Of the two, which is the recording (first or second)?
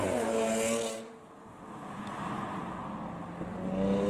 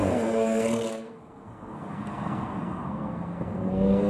first